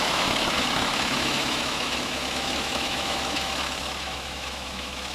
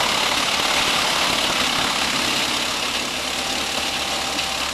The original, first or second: second